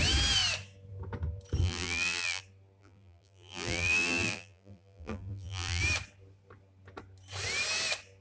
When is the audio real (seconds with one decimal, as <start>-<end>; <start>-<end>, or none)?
0.0-1.6; 2.4-2.8; 5.8-8.2